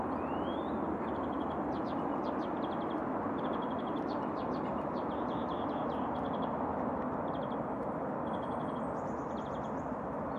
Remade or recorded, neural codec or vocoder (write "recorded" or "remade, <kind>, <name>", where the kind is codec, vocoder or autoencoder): recorded